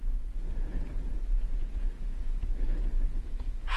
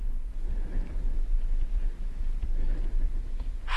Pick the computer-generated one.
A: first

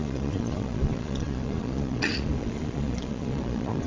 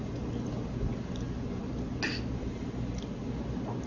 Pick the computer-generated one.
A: first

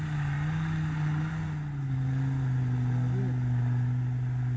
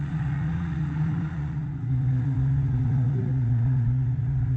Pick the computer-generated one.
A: second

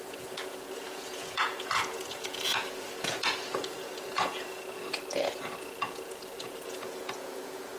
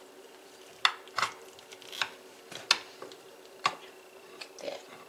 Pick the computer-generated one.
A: first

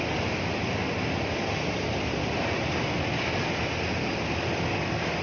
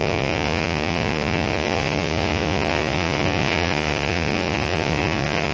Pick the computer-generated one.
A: second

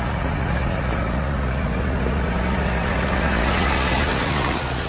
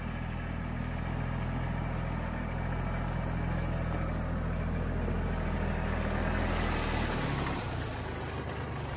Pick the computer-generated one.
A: first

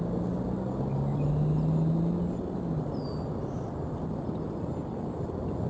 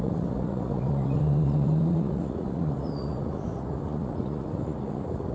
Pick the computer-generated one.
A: second